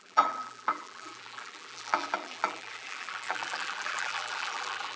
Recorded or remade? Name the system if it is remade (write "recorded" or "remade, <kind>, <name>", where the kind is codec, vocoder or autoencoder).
remade, vocoder, BigVGAN v2